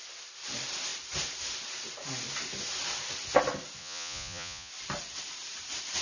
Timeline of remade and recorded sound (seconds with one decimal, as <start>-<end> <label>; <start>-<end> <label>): 0.0-3.8 recorded; 3.8-4.7 remade; 4.7-6.0 recorded